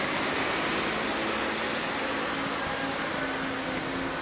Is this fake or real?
real